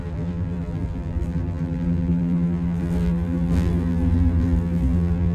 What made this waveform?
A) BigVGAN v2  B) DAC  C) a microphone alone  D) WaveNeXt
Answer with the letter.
A